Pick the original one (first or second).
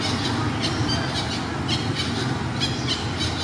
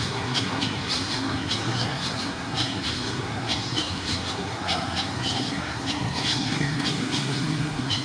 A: first